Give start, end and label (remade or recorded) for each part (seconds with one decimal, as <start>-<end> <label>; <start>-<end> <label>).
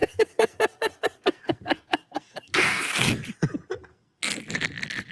0.0-3.1 remade; 3.1-3.9 recorded; 3.9-4.4 remade; 4.4-5.1 recorded